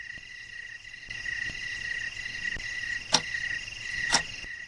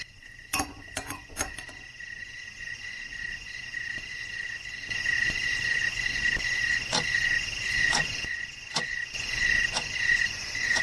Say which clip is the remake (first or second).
second